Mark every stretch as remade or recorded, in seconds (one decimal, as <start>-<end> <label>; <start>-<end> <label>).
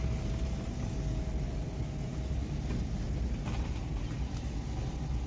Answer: 0.0-5.3 recorded